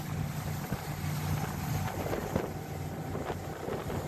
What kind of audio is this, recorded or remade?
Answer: recorded